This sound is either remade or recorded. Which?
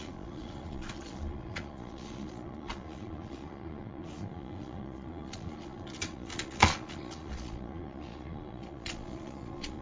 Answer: remade